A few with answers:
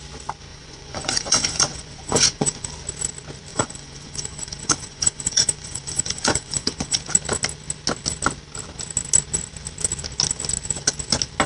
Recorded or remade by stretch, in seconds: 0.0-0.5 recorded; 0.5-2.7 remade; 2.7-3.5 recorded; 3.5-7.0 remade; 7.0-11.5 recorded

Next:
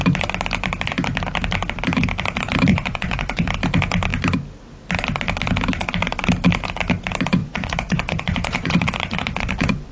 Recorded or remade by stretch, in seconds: 0.0-2.7 recorded; 2.7-3.5 remade; 3.5-7.4 recorded; 7.4-9.9 remade

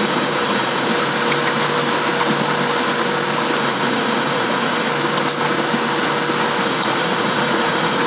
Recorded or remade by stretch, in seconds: 0.0-0.9 remade; 0.9-3.6 recorded; 3.6-4.9 remade; 4.9-6.6 recorded; 6.6-8.1 remade

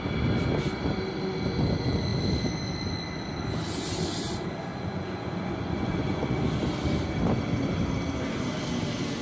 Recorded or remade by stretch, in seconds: 0.0-4.7 recorded; 4.7-6.4 remade; 6.4-9.2 recorded

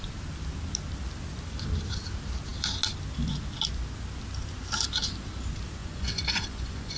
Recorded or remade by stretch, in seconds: 0.0-5.8 recorded; 5.8-7.0 remade